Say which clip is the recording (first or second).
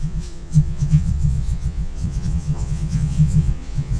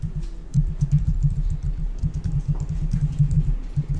second